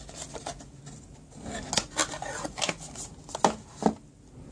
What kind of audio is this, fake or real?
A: real